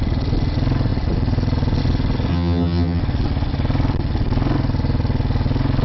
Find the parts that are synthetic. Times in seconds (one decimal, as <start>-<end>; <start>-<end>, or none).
2.3-3.0